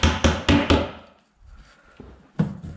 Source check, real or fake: real